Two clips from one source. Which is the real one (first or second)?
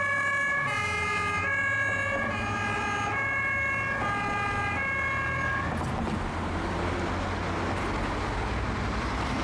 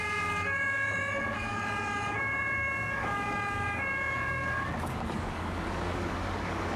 first